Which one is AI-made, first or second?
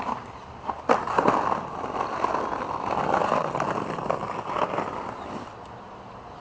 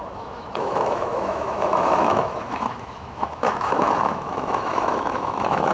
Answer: second